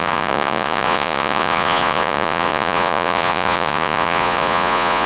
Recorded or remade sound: remade